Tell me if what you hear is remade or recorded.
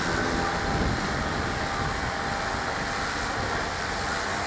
recorded